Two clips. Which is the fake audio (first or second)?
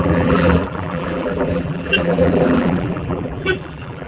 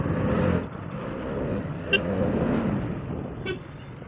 first